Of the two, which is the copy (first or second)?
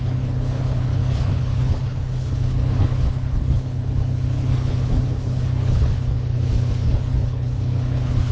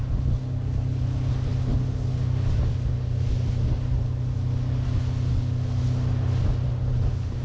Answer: first